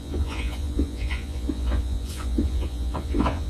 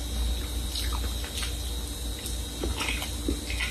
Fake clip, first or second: first